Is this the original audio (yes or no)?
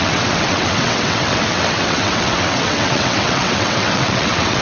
no